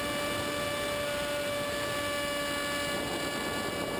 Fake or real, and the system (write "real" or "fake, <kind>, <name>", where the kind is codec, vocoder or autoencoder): real